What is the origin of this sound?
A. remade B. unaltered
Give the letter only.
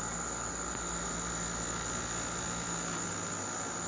B